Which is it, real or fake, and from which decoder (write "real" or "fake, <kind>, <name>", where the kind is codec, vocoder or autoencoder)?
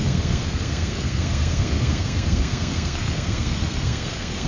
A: fake, codec, SNAC